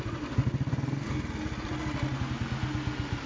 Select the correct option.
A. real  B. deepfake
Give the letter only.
A